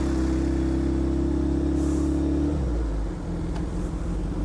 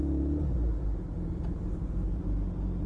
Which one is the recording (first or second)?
first